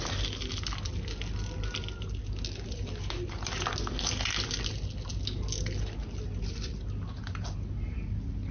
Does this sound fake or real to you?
real